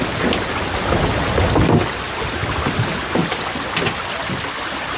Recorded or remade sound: recorded